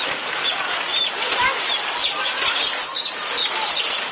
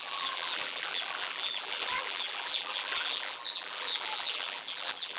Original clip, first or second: first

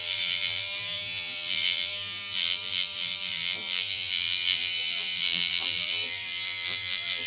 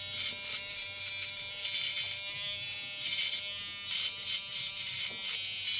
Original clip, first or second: second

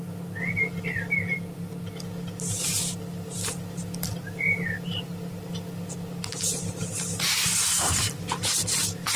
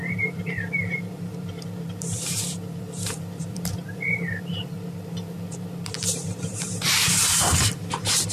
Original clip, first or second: first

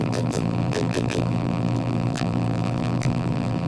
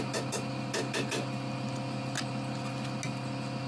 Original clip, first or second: second